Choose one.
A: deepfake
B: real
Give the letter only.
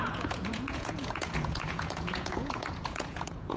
A